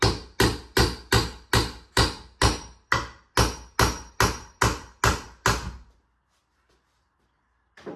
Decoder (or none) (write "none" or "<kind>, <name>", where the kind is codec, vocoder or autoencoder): none